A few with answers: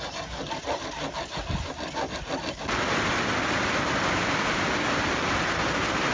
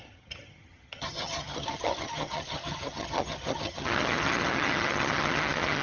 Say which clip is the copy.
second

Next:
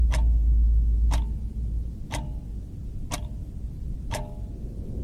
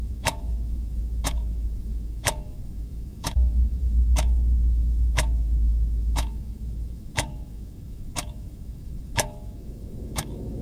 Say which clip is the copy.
second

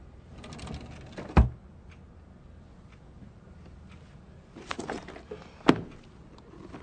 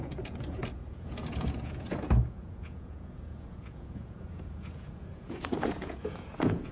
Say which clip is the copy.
second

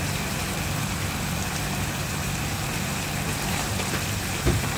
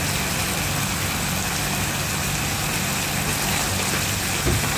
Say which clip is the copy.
first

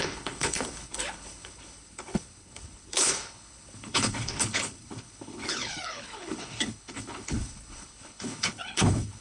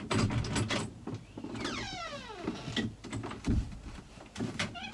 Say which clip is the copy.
first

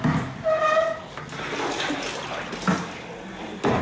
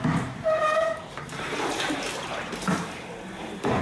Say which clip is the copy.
second